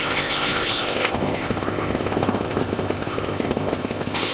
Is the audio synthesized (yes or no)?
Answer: yes